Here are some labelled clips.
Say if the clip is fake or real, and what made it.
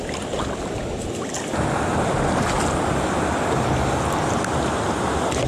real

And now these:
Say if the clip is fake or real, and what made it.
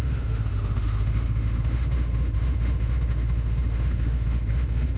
fake, autoencoder, DAC-VAE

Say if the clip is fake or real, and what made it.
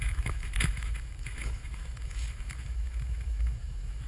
fake, autoencoder, DAC-VAE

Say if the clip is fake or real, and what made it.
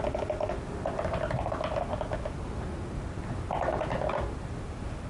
real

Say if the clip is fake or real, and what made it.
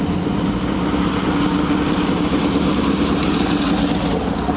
real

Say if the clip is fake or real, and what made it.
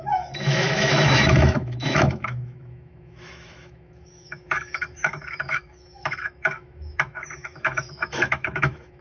fake, autoencoder, DAC-VAE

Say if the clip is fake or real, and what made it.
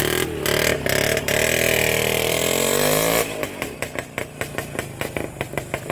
real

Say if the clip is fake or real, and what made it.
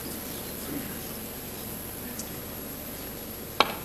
real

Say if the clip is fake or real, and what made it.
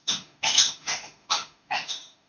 fake, autoencoder, DAC-VAE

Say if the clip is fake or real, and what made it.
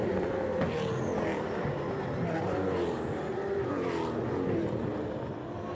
real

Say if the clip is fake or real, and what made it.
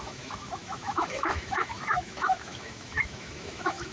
fake, autoencoder, DAC-VAE